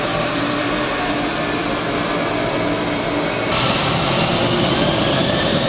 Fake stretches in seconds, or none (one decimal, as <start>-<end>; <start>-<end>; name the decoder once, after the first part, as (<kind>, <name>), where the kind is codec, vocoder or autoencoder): 0.0-1.3 (vocoder, BigVGAN v2); 4.7-5.7